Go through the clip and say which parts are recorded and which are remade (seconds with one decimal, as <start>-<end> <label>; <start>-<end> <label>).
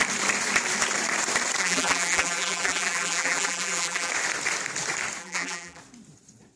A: 0.0-1.6 recorded; 1.6-4.1 remade; 4.1-5.2 recorded; 5.2-5.8 remade; 5.8-6.6 recorded